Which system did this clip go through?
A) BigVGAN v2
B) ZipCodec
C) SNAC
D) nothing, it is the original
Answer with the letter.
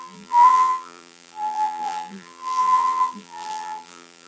A